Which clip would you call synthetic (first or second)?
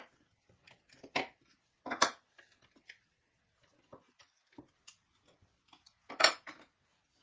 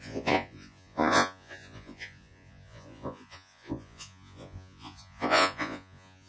second